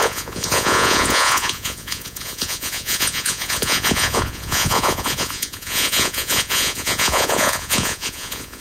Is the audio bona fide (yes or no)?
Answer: no